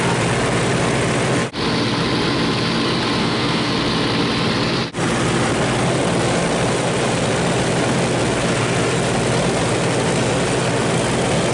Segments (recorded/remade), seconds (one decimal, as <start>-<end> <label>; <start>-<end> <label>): 0.0-3.2 recorded; 3.2-3.7 remade; 3.7-11.5 recorded